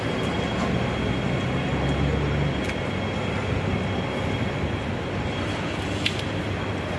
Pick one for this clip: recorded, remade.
recorded